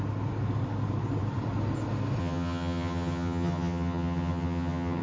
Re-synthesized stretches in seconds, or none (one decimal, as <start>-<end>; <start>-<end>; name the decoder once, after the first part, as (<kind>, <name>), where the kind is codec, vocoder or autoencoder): 2.2-5.0 (vocoder, HiFi-GAN)